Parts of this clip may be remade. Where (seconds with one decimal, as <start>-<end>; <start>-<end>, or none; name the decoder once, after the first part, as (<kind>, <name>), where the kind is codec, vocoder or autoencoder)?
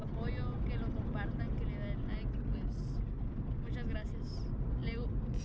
none